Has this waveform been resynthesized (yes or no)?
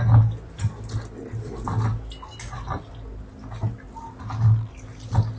no